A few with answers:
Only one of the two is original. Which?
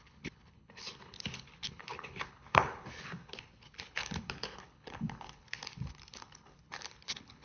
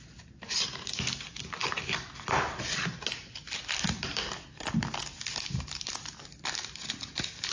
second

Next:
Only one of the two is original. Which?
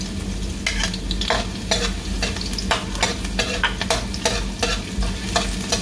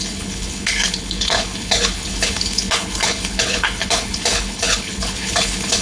first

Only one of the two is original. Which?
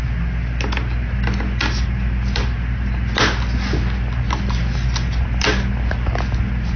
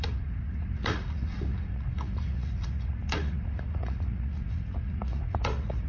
first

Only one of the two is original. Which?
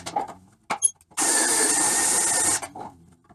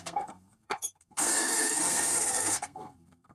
first